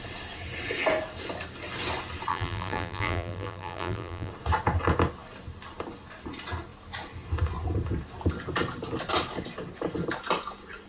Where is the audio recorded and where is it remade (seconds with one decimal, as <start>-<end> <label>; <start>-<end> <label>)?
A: 0.0-2.3 recorded; 2.3-4.3 remade; 4.3-10.9 recorded